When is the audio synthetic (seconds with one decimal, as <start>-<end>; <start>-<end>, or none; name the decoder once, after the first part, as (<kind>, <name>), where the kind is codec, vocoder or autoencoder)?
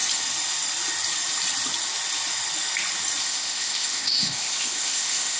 3.2-5.4 (codec, ZipCodec)